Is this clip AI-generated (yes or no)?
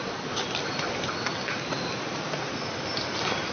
no